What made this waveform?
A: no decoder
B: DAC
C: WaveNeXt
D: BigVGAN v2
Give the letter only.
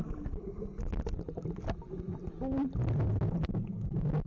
A